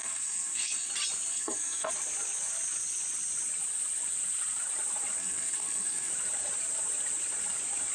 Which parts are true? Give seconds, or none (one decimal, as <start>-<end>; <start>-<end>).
0.9-1.3; 1.9-5.2; 6.1-7.9